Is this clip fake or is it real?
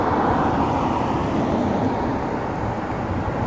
real